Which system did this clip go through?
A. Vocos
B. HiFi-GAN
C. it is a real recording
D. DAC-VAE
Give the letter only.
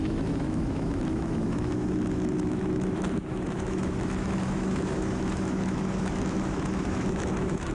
D